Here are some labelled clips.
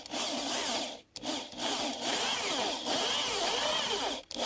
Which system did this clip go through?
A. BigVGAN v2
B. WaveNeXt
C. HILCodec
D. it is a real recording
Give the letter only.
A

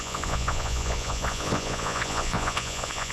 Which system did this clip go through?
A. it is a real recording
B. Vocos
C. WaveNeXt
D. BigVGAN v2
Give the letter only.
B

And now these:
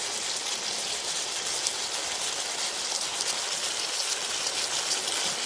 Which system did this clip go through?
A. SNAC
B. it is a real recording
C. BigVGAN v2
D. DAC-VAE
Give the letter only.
B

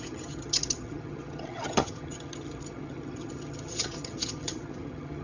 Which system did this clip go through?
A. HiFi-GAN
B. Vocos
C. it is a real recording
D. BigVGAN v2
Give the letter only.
A